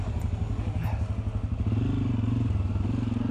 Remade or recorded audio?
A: recorded